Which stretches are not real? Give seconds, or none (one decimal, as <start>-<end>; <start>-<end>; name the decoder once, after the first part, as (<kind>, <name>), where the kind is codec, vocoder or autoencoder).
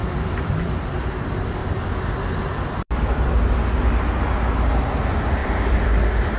0.0-0.5 (vocoder, BigVGAN v2); 1.6-3.4; 5.4-6.4